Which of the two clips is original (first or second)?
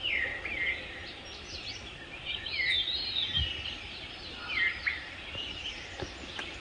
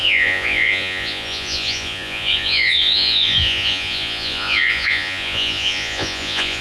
first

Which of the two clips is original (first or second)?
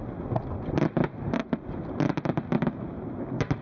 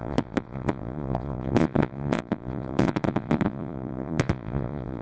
first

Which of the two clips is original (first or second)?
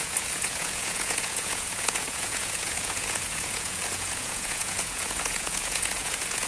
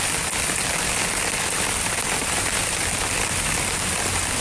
second